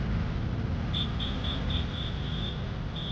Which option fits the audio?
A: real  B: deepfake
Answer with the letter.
A